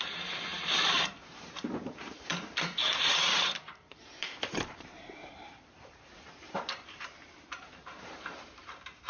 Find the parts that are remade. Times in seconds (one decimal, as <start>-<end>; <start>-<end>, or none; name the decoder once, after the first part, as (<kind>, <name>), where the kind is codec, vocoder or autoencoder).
0.0-9.1 (vocoder, BigVGAN v2)